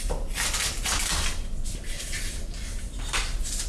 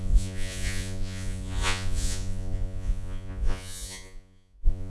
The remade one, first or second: second